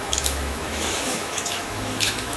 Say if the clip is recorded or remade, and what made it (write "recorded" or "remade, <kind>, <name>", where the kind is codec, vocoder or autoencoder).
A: remade, autoencoder, DAC-VAE